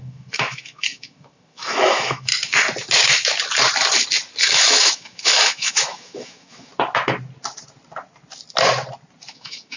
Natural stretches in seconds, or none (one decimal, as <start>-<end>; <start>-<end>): 2.3-4.4; 6.7-9.3